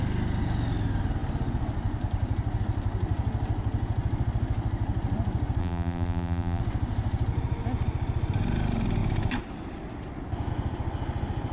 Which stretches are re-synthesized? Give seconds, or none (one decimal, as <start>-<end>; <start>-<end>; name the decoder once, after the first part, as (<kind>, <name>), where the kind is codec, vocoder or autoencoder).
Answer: 5.6-6.6 (vocoder, BigVGAN v2)